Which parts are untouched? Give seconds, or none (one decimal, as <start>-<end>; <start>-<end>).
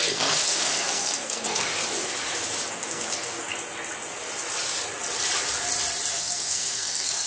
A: 1.7-2.7; 3.5-6.1